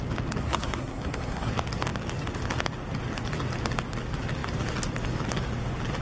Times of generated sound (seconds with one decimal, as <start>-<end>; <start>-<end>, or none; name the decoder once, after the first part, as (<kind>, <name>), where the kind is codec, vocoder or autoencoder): 0.4-1.5 (codec, SNAC)